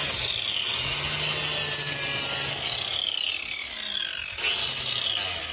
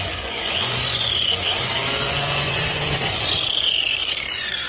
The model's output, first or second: second